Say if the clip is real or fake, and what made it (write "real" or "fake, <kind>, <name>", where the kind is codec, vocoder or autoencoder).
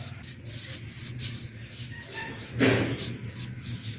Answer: real